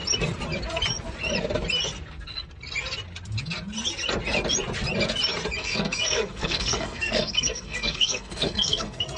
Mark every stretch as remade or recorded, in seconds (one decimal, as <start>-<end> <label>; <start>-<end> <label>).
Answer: 0.0-5.6 recorded; 5.6-9.2 remade